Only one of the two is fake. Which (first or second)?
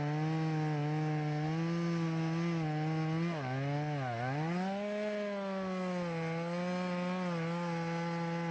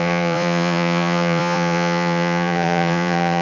second